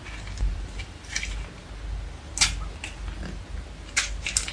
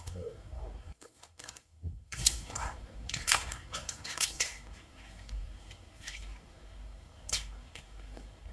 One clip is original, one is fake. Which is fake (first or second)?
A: second